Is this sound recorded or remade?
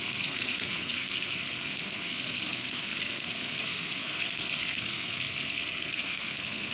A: remade